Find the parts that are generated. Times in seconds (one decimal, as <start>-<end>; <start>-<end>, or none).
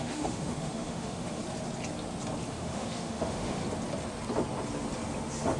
0.0-1.4; 2.5-3.6